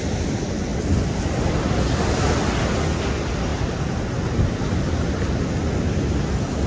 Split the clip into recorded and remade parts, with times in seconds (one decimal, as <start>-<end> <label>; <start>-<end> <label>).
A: 0.0-6.7 recorded